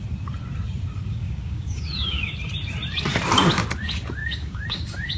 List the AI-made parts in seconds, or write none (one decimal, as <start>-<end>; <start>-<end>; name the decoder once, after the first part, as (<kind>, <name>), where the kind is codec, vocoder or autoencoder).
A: 1.1-2.3 (codec, DAC); 4.2-5.2